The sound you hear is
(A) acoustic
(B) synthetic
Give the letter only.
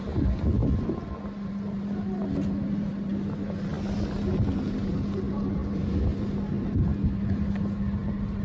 A